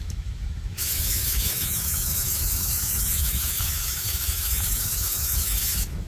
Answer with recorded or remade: remade